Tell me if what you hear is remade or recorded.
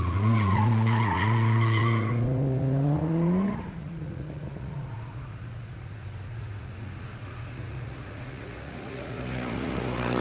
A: remade